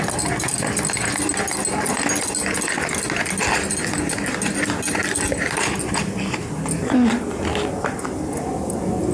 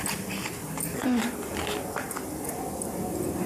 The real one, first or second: first